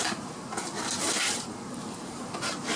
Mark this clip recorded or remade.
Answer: remade